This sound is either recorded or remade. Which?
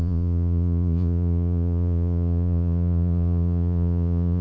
remade